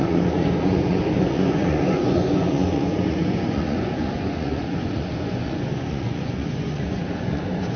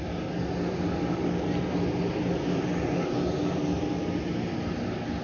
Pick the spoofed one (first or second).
first